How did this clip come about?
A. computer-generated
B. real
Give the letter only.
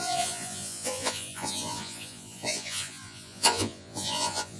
A